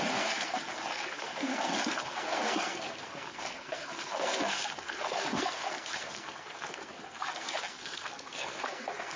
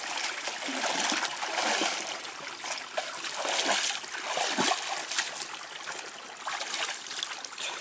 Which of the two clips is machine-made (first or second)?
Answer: first